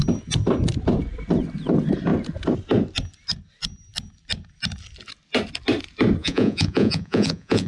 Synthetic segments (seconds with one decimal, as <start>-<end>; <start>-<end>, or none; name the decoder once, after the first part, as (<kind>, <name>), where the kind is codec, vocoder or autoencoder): 6.2-7.7 (vocoder, Vocos)